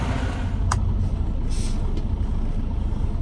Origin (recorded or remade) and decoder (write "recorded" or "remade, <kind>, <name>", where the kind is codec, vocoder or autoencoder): recorded